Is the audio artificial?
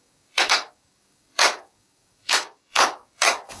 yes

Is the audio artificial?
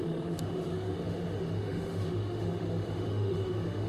yes